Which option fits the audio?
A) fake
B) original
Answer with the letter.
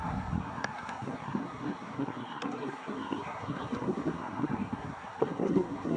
A